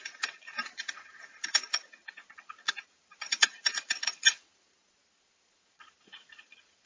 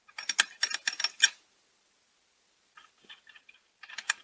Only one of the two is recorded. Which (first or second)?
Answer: second